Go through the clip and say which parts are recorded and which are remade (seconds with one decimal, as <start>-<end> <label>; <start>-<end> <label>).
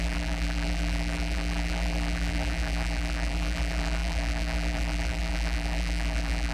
0.0-6.5 remade